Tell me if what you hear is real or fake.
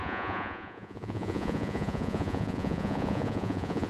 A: fake